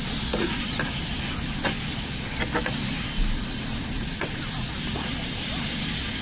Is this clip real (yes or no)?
yes